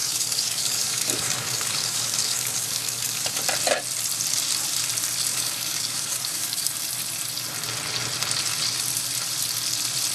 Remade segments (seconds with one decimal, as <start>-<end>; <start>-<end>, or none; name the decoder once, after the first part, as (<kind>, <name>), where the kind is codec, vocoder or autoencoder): 0.0-3.4 (codec, DAC); 5.3-6.7